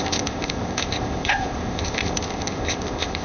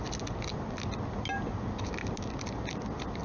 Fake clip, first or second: first